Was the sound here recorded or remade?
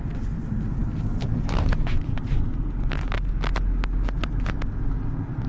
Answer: recorded